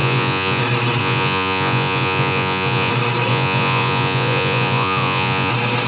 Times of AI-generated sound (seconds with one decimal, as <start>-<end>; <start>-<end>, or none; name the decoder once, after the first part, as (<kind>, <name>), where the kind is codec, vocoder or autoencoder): 0.0-0.6 (vocoder, Vocos); 1.0-2.9; 3.3-5.5